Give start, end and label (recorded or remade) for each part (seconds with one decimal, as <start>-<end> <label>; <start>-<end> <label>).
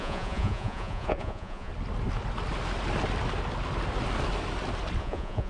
0.0-1.7 remade; 1.7-5.0 recorded; 5.0-5.5 remade